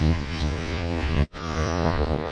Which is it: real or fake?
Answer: fake